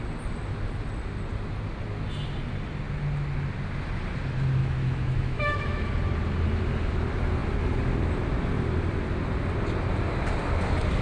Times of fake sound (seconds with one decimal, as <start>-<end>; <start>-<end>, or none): 4.6-5.9